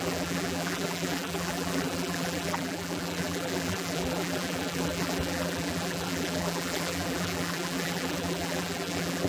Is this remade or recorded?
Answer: remade